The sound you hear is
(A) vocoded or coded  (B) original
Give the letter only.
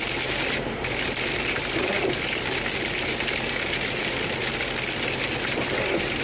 B